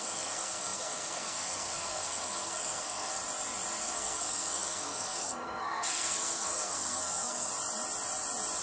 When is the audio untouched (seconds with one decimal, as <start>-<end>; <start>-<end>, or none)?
3.2-3.8; 7.5-8.6

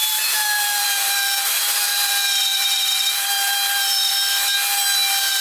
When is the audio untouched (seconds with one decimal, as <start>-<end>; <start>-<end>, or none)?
2.1-2.5; 4.1-5.4

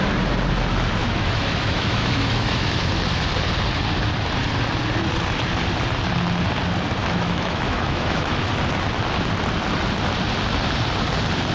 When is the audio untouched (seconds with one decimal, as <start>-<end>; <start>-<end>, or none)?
0.0-1.0; 2.9-7.0; 8.5-11.5

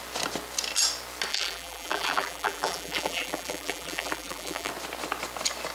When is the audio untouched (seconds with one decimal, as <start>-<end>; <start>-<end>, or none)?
0.0-1.3; 4.7-5.7

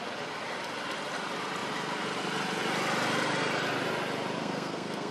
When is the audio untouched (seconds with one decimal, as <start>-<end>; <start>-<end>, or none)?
0.0-4.4

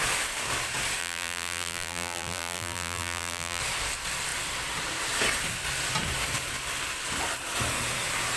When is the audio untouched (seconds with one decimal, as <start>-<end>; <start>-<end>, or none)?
0.0-1.0; 3.6-8.4